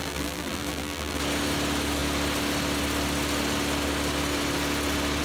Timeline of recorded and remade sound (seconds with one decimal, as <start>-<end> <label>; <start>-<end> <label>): 0.0-1.2 remade; 1.2-5.2 recorded